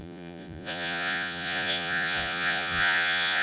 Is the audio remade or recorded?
remade